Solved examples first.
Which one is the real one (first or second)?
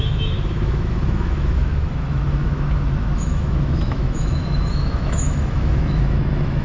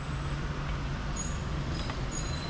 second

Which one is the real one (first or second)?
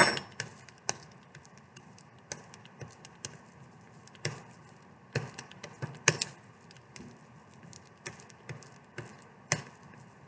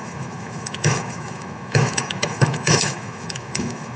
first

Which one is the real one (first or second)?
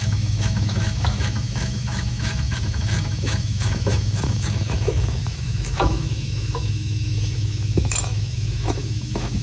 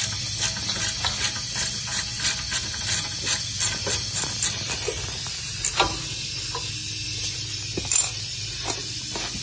second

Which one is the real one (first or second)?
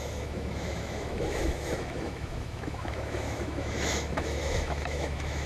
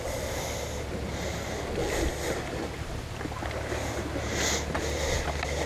second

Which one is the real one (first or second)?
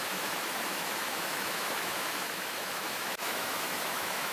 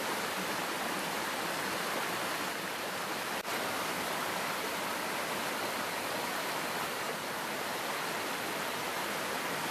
second